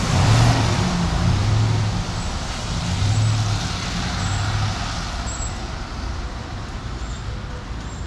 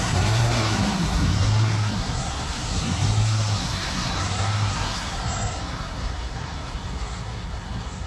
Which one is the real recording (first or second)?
first